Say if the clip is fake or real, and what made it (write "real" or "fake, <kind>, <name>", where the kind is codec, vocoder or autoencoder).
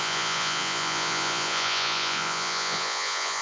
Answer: fake, vocoder, Vocos